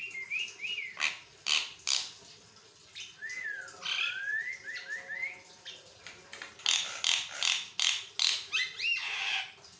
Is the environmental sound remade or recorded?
recorded